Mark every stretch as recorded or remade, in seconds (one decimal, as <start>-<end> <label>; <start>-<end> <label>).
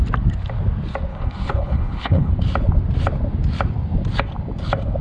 0.0-1.1 recorded; 1.1-2.3 remade; 2.3-5.0 recorded